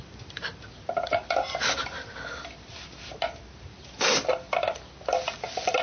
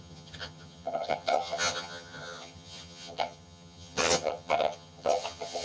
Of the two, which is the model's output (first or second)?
second